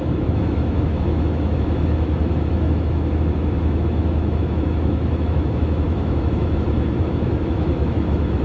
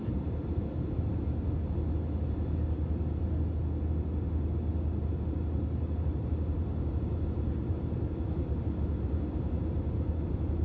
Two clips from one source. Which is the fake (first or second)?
first